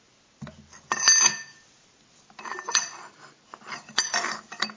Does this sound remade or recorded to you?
recorded